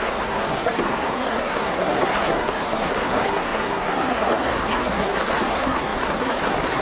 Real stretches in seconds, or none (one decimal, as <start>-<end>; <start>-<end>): none

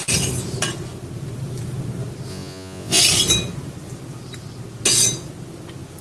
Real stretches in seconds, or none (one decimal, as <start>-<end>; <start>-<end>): 0.0-2.3; 3.0-6.0